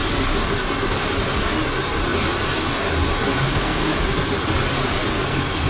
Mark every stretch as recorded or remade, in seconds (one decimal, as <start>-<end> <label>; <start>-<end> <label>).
0.0-3.4 recorded; 3.4-3.9 remade; 3.9-5.1 recorded; 5.1-5.7 remade